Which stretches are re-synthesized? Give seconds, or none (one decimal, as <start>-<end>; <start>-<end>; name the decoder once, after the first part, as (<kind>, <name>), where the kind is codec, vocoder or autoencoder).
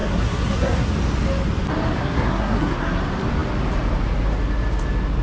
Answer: 0.0-0.9 (codec, SNAC); 2.0-3.0